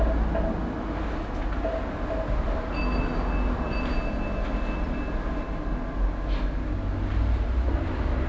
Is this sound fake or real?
real